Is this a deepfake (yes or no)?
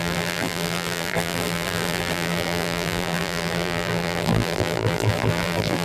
yes